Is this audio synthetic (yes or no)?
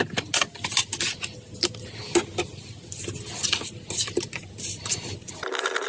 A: no